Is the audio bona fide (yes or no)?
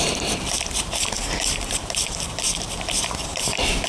no